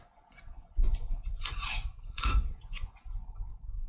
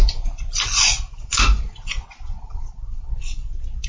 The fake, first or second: first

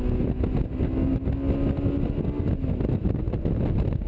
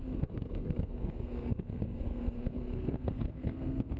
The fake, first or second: second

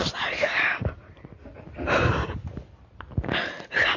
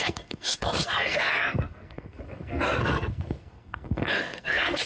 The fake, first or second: second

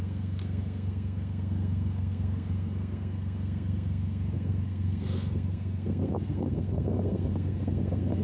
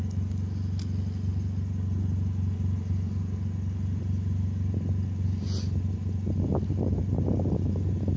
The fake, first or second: first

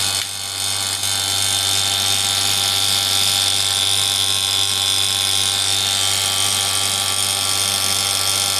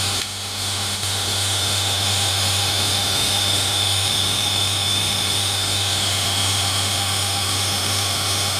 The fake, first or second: second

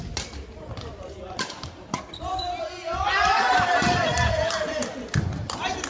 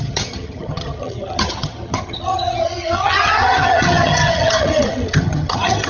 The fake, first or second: second